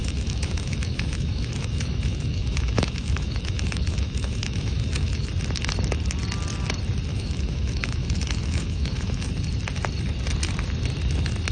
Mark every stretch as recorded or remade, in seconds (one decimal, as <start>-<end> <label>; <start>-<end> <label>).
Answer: 0.0-5.3 remade; 5.3-7.1 recorded; 7.1-9.3 remade; 9.3-11.5 recorded